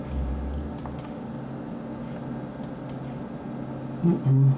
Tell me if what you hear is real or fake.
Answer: real